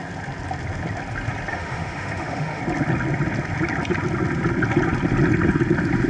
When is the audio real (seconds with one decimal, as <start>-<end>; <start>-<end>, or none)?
0.0-1.5; 2.6-6.1